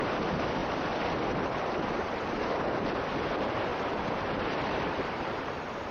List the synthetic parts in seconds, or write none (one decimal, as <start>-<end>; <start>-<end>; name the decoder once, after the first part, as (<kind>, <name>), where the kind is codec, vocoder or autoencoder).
0.0-3.7 (vocoder, BigVGAN v2); 4.4-5.9